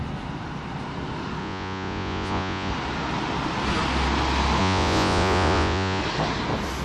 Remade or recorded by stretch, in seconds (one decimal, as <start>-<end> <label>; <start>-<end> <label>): 0.0-1.4 recorded; 1.4-2.7 remade; 2.7-4.6 recorded; 4.6-6.0 remade; 6.0-6.8 recorded